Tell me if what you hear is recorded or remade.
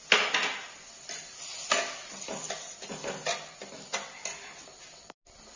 recorded